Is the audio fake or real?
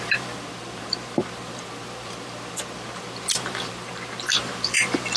fake